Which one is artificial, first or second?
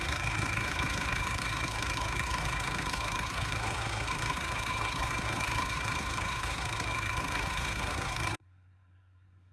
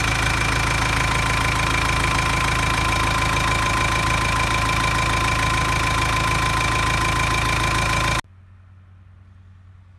first